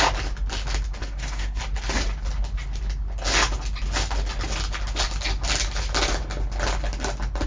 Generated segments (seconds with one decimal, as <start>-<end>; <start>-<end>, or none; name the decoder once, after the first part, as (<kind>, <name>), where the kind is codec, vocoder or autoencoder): 1.0-1.6 (codec, SNAC)

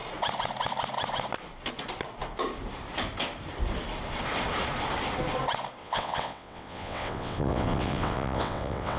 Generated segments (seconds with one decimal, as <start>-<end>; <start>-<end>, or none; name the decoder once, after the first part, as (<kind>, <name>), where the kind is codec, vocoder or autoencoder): 5.8-9.0 (vocoder, WaveNeXt)

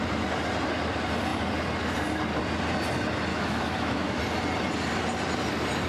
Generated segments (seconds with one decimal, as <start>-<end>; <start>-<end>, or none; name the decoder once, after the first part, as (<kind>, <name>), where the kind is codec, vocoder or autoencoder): 3.3-4.2 (autoencoder, DAC-VAE)

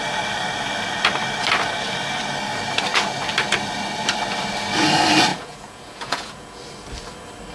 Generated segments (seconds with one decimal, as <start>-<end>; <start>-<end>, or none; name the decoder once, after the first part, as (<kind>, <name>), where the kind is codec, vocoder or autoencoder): 5.3-6.6 (vocoder, Vocos)